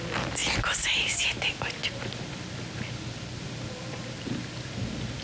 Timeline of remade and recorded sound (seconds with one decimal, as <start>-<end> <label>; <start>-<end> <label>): 0.0-5.2 recorded

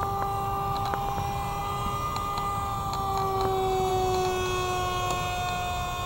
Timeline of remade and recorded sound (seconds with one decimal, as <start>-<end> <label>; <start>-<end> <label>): 0.0-6.1 recorded